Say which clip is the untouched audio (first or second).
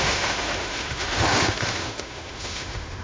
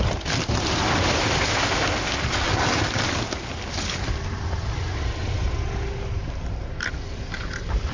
second